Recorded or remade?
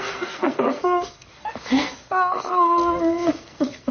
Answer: remade